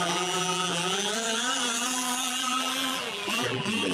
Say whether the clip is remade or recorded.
remade